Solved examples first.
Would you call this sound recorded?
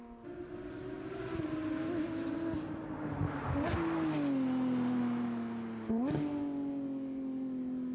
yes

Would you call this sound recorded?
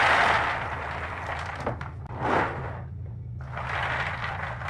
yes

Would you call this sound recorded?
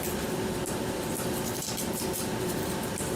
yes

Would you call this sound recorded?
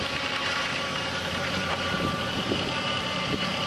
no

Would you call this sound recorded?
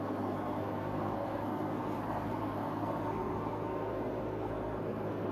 no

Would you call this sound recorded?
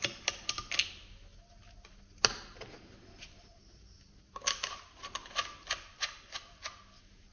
yes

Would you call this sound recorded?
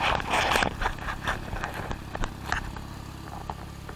yes